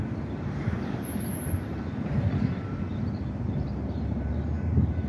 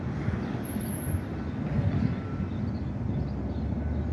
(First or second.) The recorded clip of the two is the second